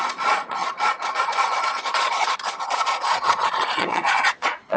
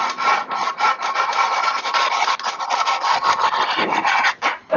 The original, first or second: second